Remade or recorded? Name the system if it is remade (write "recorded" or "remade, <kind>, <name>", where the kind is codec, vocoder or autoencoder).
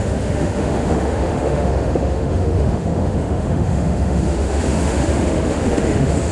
remade, autoencoder, DAC-VAE